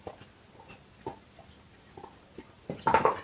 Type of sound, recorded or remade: recorded